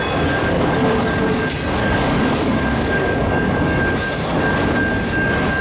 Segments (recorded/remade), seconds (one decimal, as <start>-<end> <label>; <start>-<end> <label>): 0.0-0.4 recorded; 0.4-1.4 remade; 1.4-1.8 recorded; 1.8-3.8 remade; 3.8-5.6 recorded